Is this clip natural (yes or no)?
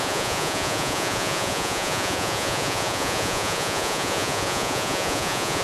no